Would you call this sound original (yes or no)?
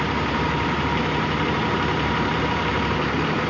no